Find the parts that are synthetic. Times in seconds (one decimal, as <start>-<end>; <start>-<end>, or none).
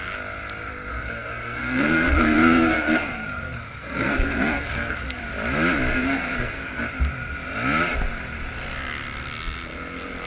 0.9-5.2; 5.9-6.8